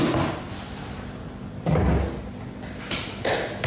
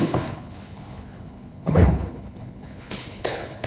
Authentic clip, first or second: first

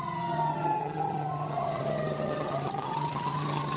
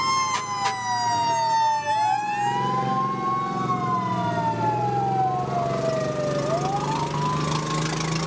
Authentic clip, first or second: second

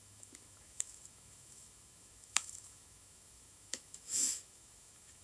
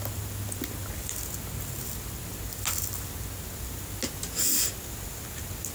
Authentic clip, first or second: second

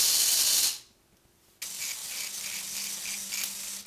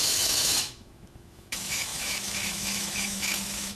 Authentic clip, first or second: first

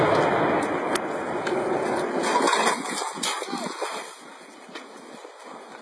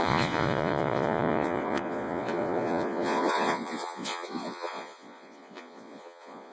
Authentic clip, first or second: first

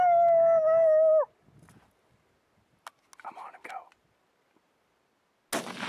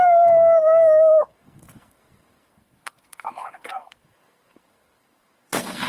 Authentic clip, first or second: first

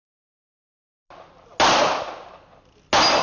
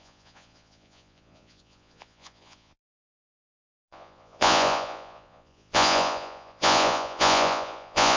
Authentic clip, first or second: first